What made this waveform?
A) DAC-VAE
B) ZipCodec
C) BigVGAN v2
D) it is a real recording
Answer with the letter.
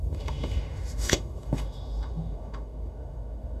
A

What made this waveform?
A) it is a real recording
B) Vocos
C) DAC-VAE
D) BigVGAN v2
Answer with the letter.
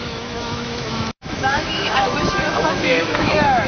C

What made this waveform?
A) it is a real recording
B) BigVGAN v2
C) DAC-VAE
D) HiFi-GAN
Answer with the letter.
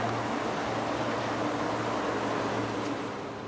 A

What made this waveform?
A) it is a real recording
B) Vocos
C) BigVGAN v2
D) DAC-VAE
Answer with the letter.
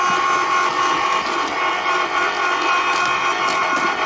A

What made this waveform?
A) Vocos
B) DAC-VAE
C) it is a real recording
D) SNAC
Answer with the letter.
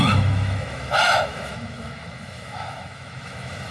B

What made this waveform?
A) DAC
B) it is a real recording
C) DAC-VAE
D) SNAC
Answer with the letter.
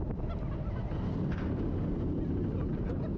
B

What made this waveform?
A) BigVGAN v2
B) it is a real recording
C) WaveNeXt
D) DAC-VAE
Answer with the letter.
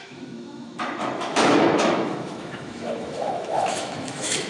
D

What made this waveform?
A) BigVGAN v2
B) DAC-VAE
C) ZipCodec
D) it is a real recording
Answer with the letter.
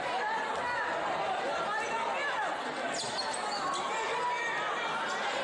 D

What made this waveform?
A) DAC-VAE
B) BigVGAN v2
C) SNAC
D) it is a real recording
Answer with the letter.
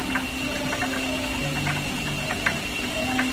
D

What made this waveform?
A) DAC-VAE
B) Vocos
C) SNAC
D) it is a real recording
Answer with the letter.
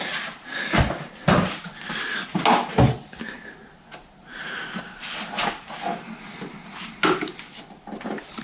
D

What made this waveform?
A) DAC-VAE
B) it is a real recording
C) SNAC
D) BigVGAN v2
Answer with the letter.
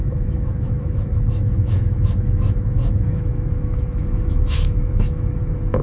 A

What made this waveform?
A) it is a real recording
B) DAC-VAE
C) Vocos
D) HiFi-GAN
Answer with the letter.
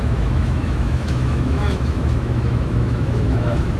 B